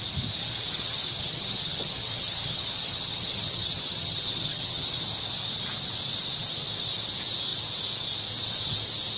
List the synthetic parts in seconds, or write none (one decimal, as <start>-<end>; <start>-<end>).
0.4-5.0